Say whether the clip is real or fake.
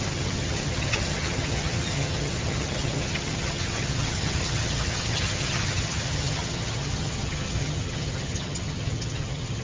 fake